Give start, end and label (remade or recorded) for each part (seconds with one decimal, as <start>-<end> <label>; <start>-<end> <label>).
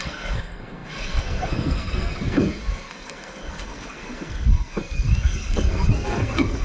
0.0-6.6 remade